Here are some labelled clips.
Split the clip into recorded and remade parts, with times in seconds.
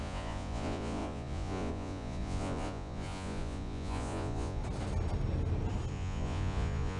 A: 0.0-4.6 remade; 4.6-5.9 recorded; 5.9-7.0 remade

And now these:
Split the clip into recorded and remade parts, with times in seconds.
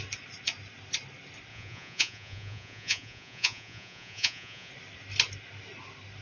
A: 0.0-1.5 recorded; 1.5-4.7 remade; 4.7-6.2 recorded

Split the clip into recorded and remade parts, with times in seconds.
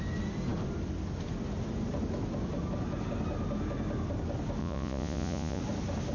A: 0.0-4.6 recorded; 4.6-5.6 remade; 5.6-6.1 recorded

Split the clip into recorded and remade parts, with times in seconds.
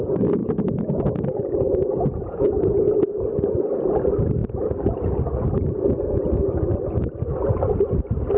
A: 0.0-0.4 recorded; 0.4-3.2 remade; 3.2-8.4 recorded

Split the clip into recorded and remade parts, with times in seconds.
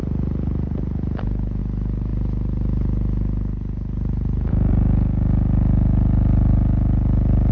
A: 0.0-7.5 recorded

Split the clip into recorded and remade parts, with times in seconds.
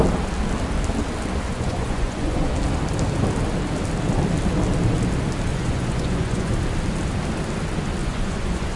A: 0.0-1.5 recorded; 1.5-2.5 remade; 2.5-5.5 recorded; 5.5-6.5 remade; 6.5-8.0 recorded; 8.0-8.8 remade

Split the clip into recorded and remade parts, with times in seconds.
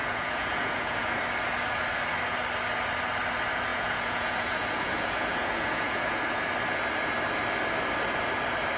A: 0.0-1.1 remade; 1.1-3.7 recorded; 3.7-6.4 remade; 6.4-8.8 recorded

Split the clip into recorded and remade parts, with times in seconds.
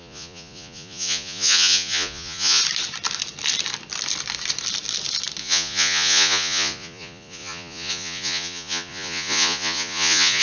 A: 0.0-2.6 remade; 2.6-5.4 recorded; 5.4-10.4 remade